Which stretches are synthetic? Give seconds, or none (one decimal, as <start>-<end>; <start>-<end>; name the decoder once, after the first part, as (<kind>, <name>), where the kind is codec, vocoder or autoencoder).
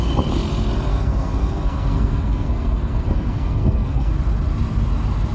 0.9-4.1 (codec, SNAC)